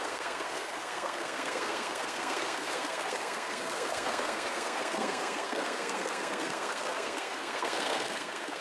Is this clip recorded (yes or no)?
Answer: no